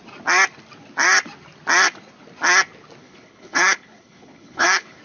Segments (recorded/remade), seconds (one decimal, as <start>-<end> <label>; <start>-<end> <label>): 0.0-3.0 recorded; 3.0-5.0 remade